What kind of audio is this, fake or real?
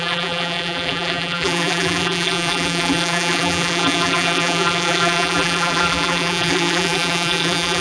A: fake